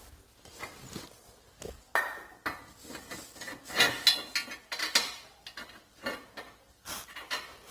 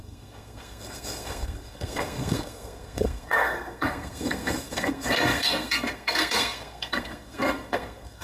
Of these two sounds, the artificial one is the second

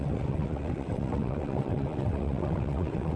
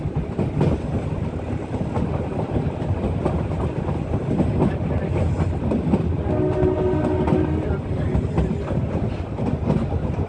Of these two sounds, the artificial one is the first